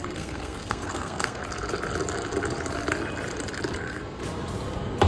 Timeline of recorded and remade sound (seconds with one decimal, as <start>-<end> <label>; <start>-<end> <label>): 0.0-1.4 remade; 1.4-3.8 recorded; 3.8-4.2 remade; 4.2-5.1 recorded